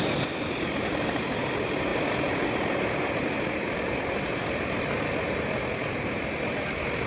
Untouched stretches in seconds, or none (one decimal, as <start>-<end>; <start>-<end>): 0.0-7.1